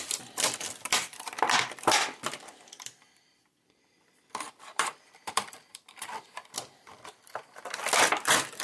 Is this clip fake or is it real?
fake